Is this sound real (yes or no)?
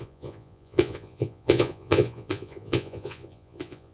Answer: no